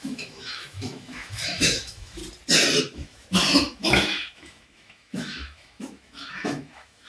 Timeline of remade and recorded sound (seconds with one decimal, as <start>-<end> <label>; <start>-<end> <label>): 0.0-2.2 remade; 2.2-2.8 recorded; 2.8-7.1 remade